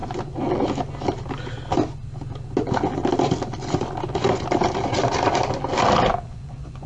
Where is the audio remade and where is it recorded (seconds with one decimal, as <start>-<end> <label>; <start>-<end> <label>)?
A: 0.0-6.1 recorded; 6.1-6.9 remade